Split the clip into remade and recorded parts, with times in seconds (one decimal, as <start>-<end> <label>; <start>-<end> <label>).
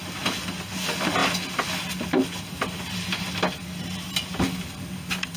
0.0-5.4 recorded